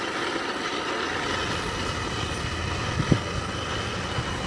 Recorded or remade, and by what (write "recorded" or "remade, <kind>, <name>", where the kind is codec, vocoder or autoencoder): recorded